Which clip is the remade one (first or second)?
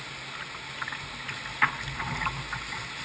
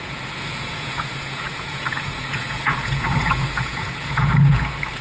second